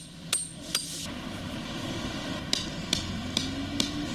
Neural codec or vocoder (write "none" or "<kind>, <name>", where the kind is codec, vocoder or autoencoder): none